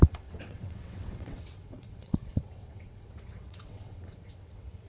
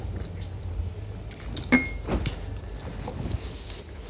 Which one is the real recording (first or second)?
second